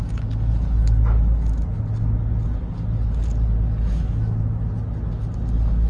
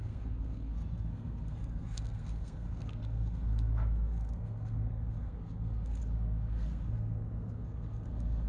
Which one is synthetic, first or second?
second